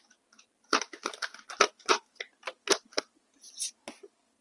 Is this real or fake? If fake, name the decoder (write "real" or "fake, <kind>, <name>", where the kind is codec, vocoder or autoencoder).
real